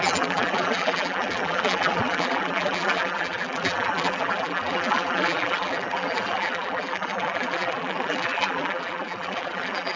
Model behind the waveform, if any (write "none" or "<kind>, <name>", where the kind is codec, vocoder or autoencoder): vocoder, BigVGAN v2